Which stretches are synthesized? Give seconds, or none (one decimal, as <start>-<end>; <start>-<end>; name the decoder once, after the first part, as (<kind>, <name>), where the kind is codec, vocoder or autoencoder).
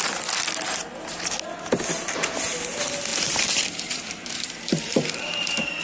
3.1-5.8 (vocoder, BigVGAN v2)